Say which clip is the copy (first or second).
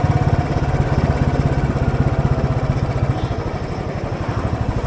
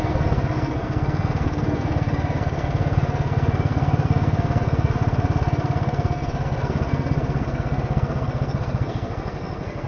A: second